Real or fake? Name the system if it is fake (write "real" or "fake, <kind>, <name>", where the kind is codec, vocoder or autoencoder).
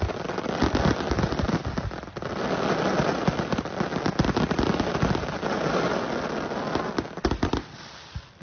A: real